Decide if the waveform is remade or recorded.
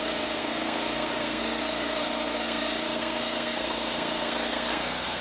remade